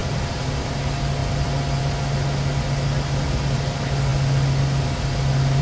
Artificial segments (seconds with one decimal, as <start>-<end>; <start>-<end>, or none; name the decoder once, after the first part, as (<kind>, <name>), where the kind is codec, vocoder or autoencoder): 0.0-0.7 (vocoder, BigVGAN v2); 1.2-1.8